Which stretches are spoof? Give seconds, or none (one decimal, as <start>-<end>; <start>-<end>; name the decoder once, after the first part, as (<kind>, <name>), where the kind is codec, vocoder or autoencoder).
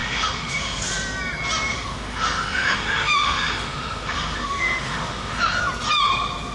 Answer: 0.0-0.8 (autoencoder, DAC-VAE); 1.7-5.6